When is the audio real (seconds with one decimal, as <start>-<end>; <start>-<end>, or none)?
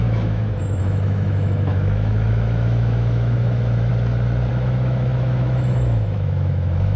3.9-4.5